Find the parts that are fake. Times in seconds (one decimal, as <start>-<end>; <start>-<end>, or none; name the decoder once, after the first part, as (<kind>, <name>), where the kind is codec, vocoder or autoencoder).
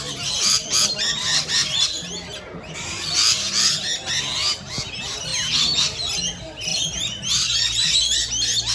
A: 0.0-1.6 (vocoder, BigVGAN v2); 4.7-5.3; 6.3-8.7